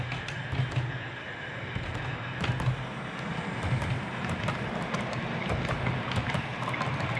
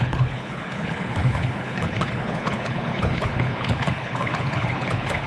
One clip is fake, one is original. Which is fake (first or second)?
second